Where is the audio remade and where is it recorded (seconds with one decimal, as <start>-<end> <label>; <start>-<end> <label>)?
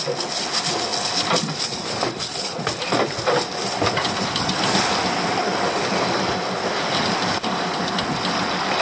0.0-8.8 recorded